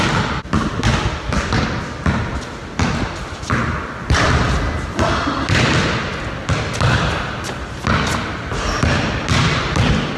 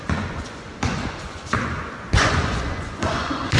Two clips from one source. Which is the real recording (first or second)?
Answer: first